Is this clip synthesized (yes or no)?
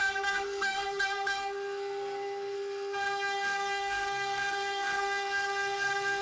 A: yes